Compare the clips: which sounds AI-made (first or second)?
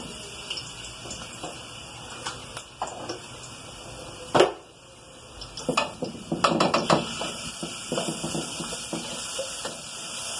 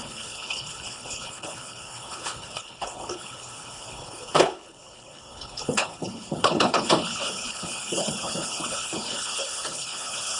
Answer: second